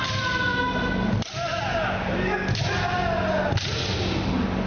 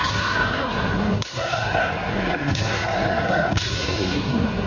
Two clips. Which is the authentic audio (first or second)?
first